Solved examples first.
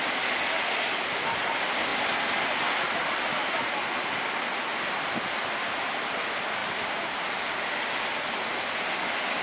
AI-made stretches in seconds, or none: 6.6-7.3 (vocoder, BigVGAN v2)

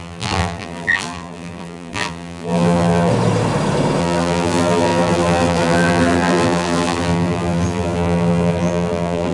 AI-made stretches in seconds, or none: 0.0-3.1 (vocoder, BigVGAN v2); 4.0-9.3

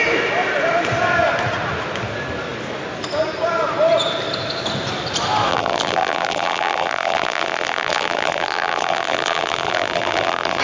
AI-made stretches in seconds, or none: 5.5-10.6 (vocoder, BigVGAN v2)

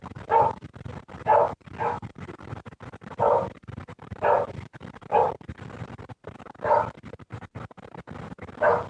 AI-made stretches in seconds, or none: 1.3-6.6 (vocoder, BigVGAN v2)

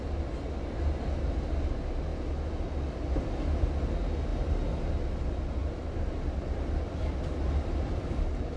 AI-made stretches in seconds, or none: 4.3-4.9 (vocoder, BigVGAN v2); 5.6-8.6

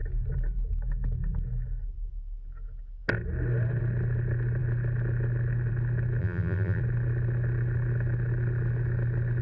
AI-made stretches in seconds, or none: 6.2-6.8 (vocoder, BigVGAN v2)

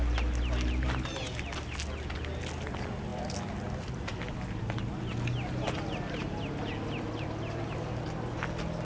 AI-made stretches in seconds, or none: none